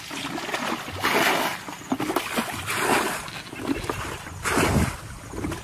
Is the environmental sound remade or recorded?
recorded